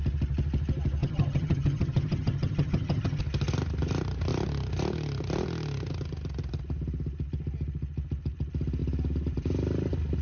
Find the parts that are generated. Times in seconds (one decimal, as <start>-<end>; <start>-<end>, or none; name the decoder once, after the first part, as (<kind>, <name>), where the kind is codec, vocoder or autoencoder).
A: 1.0-3.2 (vocoder, HiFi-GAN)